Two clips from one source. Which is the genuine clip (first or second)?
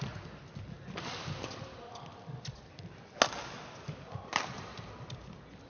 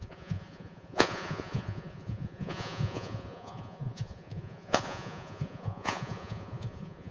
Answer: first